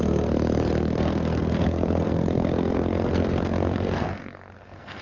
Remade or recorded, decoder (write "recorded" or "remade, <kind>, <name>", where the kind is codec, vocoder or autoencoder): remade, codec, SNAC